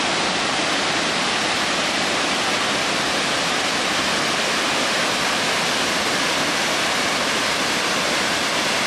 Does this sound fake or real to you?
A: fake